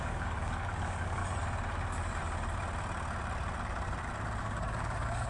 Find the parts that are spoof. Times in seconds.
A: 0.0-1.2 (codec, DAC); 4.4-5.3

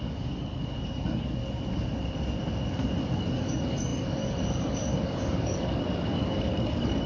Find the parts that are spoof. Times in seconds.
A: 0.0-1.4 (codec, DAC); 3.0-7.1

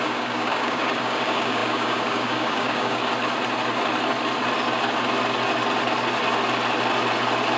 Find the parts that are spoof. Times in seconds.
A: 0.0-3.0 (codec, DAC)

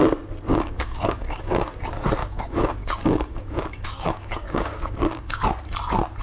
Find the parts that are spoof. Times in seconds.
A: 0.5-1.6 (codec, DAC); 2.2-5.4

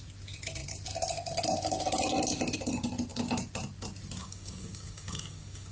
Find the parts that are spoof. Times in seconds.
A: 4.2-5.7 (codec, DAC)

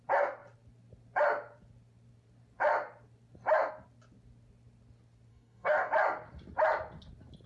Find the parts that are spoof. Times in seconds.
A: 5.3-5.9 (codec, DAC)